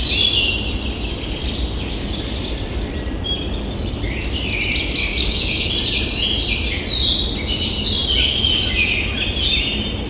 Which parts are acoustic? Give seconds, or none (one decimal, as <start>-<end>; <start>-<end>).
0.0-5.0; 5.7-10.1